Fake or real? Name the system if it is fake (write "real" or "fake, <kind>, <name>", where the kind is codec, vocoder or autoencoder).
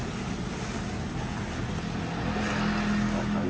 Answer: real